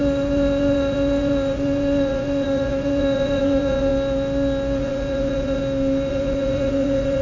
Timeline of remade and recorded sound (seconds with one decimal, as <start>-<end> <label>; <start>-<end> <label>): 0.0-3.9 remade; 3.9-4.8 recorded; 4.8-5.6 remade; 5.6-6.1 recorded; 6.1-7.2 remade